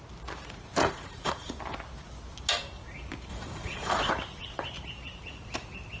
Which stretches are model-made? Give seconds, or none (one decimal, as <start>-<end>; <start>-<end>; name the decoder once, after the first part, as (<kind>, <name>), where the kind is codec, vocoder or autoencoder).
0.8-1.6 (vocoder, Vocos); 3.3-4.1